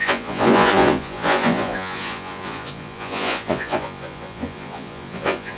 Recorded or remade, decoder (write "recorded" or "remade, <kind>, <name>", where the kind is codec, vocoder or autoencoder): remade, vocoder, Vocos